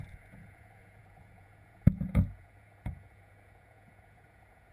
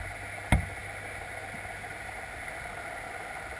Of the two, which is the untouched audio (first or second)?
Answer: second